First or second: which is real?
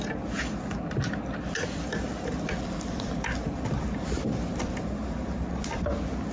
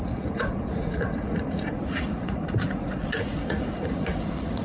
first